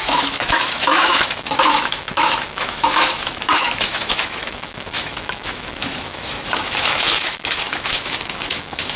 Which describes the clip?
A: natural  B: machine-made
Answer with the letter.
B